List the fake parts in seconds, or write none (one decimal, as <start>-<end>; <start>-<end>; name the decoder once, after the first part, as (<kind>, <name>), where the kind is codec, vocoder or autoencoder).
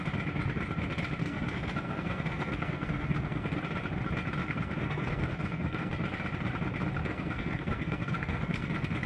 1.2-3.6 (codec, SNAC); 4.4-5.9; 7.0-9.1